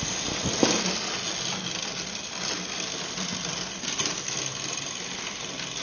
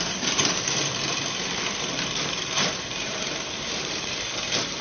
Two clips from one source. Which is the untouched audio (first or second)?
first